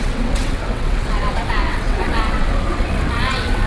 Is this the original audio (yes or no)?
no